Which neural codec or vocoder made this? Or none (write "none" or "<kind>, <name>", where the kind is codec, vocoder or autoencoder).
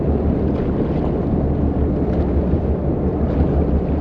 none